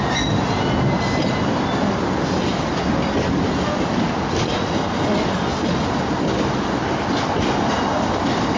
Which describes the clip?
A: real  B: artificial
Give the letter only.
A